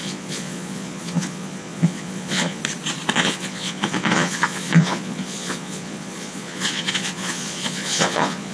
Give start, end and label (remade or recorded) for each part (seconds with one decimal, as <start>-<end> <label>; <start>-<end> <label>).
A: 0.0-2.6 remade; 2.6-3.1 recorded; 3.1-8.5 remade

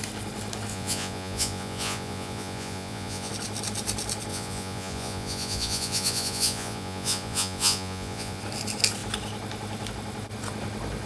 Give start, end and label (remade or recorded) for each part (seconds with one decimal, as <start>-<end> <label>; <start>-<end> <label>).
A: 0.0-0.7 recorded; 0.7-3.3 remade; 3.3-4.3 recorded; 4.3-8.4 remade; 8.4-11.1 recorded

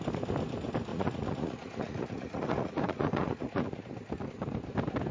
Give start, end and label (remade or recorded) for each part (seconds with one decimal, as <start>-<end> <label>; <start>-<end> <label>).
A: 0.0-0.9 recorded; 0.9-3.8 remade; 3.8-5.1 recorded

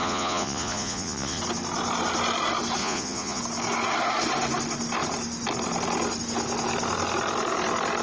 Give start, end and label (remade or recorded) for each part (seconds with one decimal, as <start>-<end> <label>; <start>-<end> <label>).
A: 0.0-1.4 remade; 1.4-2.8 recorded; 2.8-3.4 remade; 3.4-8.0 recorded

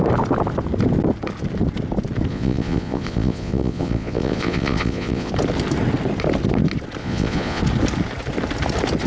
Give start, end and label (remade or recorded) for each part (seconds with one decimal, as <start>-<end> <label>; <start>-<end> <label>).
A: 0.0-2.3 recorded; 2.3-5.3 remade; 5.3-7.0 recorded; 7.0-7.6 remade; 7.6-9.1 recorded

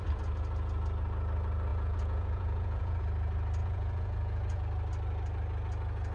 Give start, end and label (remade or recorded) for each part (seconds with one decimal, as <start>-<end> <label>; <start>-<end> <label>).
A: 0.0-1.7 recorded; 1.7-3.0 remade; 3.0-3.6 recorded; 3.6-4.6 remade; 4.6-6.1 recorded